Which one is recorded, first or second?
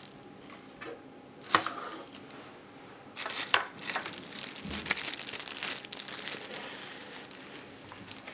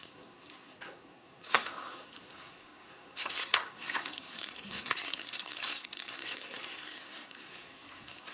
first